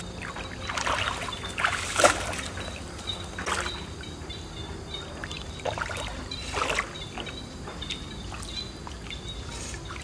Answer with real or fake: real